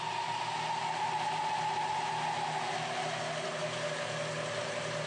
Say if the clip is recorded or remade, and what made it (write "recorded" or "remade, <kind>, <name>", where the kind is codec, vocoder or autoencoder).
recorded